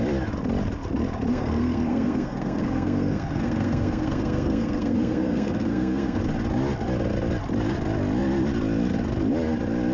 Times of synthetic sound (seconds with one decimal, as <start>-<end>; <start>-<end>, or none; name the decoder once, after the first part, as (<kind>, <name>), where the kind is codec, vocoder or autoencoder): 1.3-6.2 (codec, SNAC)